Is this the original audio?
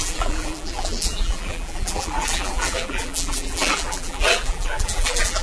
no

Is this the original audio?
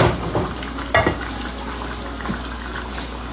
yes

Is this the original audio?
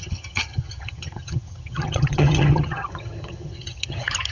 no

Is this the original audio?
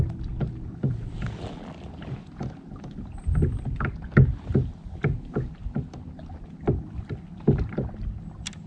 yes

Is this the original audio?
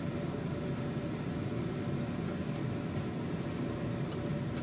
yes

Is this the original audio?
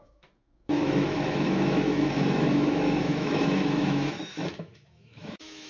no